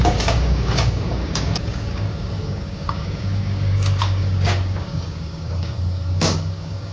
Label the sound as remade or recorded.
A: remade